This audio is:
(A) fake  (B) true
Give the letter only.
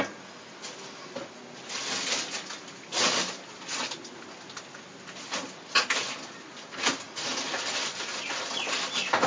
B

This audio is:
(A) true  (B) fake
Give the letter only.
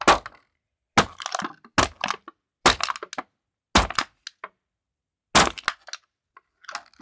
A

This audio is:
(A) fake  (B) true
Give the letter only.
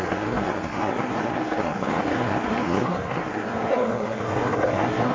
A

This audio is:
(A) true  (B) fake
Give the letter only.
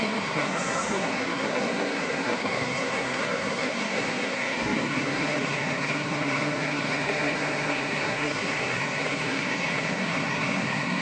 B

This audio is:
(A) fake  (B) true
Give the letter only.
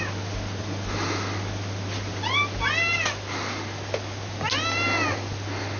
B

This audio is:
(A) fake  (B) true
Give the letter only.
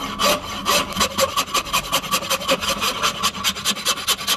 B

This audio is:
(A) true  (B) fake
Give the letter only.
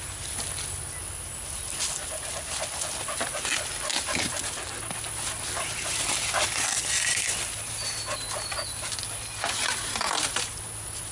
A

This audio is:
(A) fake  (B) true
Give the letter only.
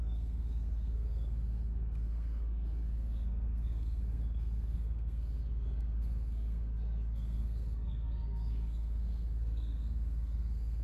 A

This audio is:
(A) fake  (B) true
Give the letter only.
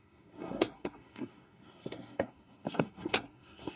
A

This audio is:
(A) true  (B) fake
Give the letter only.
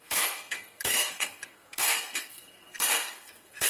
B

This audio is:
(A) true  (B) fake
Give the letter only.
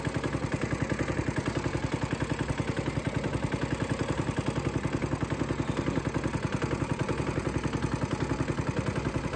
A